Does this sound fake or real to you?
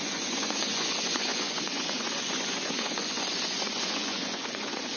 fake